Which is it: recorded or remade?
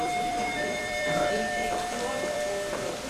remade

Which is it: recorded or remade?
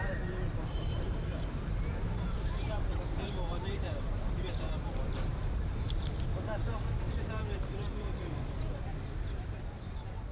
remade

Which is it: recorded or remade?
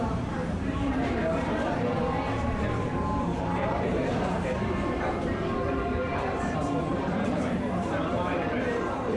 remade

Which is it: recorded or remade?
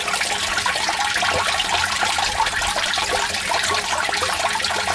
remade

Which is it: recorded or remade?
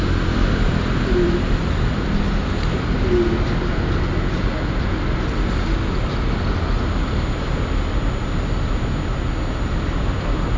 recorded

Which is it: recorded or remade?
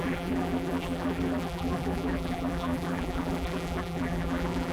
remade